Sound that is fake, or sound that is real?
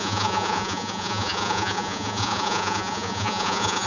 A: fake